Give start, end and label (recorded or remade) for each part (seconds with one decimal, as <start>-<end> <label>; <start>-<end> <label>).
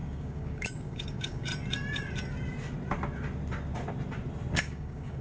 0.0-1.5 remade; 1.5-4.6 recorded; 4.6-5.2 remade